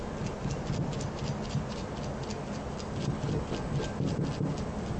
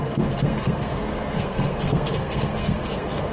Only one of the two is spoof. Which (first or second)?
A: second